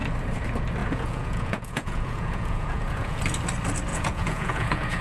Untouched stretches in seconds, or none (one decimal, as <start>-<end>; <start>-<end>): 0.0-0.8; 3.2-3.9